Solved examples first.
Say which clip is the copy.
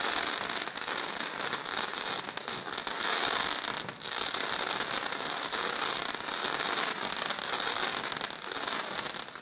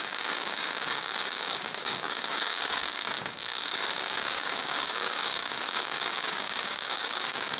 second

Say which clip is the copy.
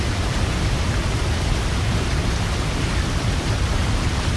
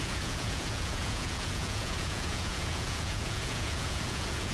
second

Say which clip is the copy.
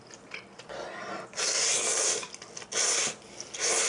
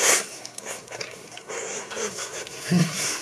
second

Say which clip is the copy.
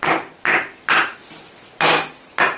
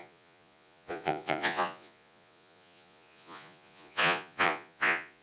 second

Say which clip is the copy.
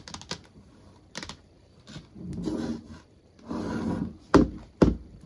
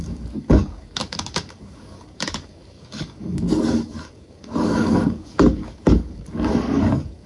second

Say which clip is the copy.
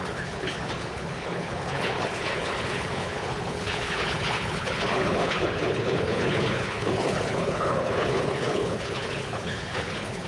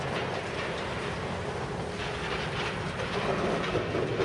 first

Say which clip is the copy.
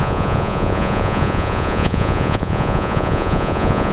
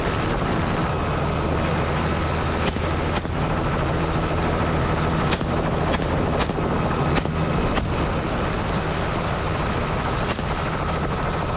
first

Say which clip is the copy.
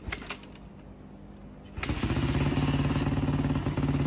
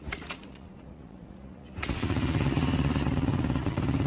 second